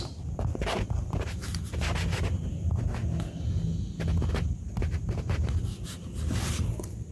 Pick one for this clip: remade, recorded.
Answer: recorded